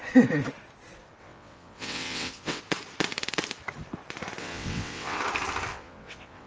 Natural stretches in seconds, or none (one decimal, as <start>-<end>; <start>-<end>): 0.0-1.2; 2.6-4.4; 5.2-5.7